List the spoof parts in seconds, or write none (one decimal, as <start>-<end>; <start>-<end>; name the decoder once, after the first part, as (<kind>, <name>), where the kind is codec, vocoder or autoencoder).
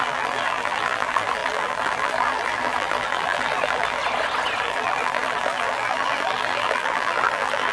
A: 0.0-4.0 (vocoder, BigVGAN v2); 4.6-7.7